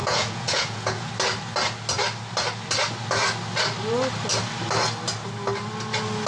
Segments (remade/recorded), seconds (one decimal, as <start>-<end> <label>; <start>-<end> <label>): 0.0-1.1 remade; 1.1-6.3 recorded